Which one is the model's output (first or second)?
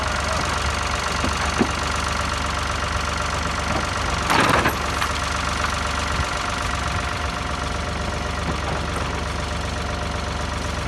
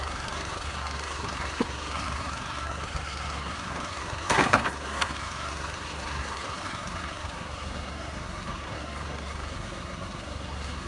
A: second